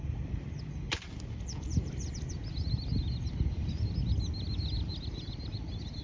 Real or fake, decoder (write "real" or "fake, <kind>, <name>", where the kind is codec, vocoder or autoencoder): real